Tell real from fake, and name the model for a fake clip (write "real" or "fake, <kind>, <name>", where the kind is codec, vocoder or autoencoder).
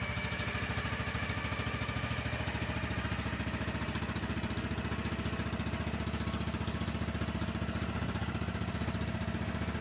real